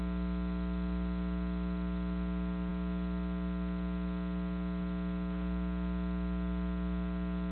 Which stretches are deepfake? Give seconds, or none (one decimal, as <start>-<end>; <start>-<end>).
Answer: none